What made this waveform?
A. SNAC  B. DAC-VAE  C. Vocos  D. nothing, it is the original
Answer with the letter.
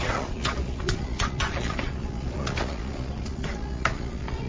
C